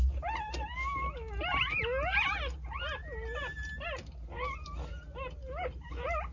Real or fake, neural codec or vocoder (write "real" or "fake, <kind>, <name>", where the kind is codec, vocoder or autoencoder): real